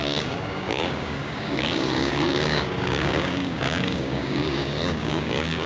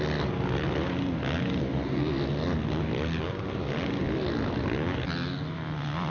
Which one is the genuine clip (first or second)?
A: second